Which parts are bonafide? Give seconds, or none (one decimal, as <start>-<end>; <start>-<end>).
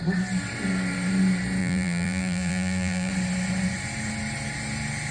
0.0-1.6; 3.1-5.1